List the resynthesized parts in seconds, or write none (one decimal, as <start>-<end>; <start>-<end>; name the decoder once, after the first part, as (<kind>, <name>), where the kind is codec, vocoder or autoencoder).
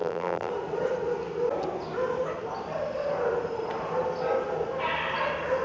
0.0-0.5 (vocoder, BigVGAN v2)